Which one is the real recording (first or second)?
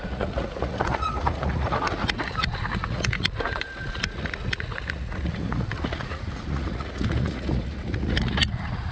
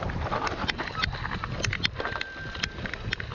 second